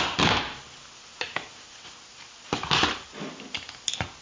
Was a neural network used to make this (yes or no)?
no